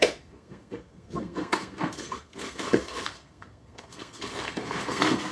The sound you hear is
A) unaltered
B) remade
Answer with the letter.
B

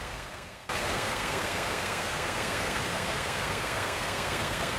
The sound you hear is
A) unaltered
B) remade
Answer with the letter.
B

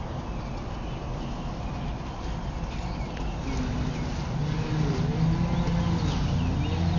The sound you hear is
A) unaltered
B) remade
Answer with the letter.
A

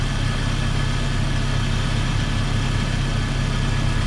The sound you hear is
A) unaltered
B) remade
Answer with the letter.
A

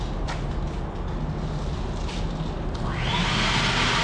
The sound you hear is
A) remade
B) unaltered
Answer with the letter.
B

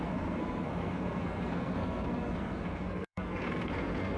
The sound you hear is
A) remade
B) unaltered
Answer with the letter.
A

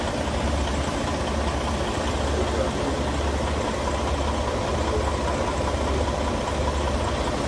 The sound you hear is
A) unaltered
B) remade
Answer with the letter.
A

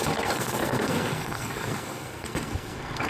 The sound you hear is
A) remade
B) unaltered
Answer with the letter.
A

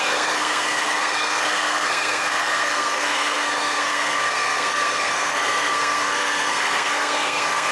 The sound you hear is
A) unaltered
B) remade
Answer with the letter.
B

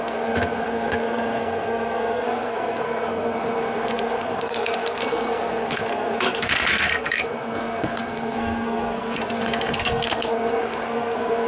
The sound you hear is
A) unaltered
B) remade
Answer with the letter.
B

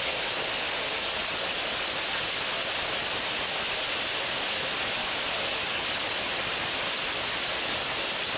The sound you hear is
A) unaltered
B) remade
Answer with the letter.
A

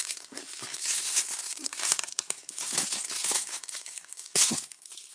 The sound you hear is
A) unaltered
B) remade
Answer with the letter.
B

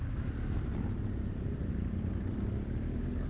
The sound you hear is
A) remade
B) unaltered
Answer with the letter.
B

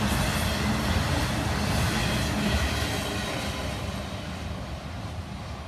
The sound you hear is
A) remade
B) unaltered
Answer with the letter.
B